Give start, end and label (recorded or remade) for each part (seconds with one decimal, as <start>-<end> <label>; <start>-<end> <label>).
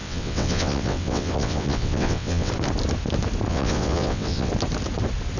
0.0-2.5 remade; 2.5-3.5 recorded; 3.5-4.5 remade; 4.5-5.4 recorded